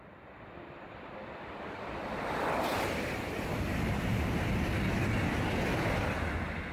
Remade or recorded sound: recorded